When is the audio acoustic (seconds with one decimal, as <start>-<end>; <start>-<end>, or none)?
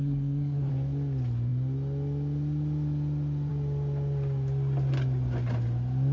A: 0.7-6.1